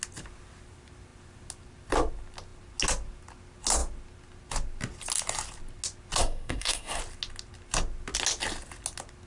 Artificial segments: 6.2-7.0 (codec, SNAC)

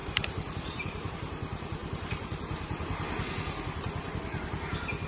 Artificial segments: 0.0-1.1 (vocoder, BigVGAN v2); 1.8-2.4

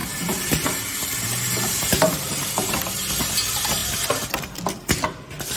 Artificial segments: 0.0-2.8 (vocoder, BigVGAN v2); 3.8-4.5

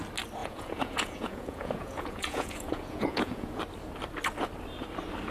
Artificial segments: 0.4-3.6 (vocoder, Vocos)